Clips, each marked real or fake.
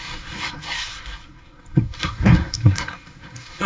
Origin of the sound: fake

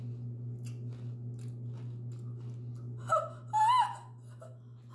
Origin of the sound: real